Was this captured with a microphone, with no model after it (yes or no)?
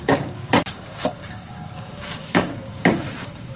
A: no